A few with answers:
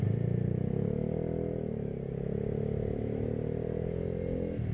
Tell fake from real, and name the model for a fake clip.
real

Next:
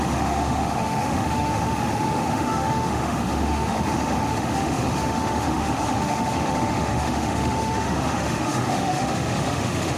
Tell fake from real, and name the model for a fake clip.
fake, autoencoder, DAC-VAE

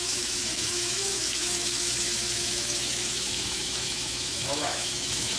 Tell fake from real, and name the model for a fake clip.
fake, autoencoder, DAC-VAE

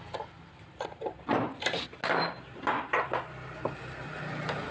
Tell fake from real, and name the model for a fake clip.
real